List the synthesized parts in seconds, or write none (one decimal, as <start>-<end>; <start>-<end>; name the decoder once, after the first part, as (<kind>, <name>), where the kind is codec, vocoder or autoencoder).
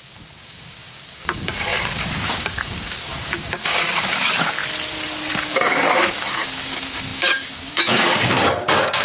0.0-4.6 (codec, DAC); 5.3-9.0